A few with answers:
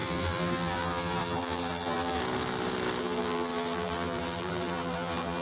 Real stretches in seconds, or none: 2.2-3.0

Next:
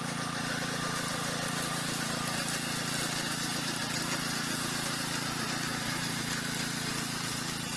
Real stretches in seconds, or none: 0.0-7.8